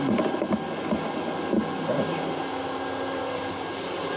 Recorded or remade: recorded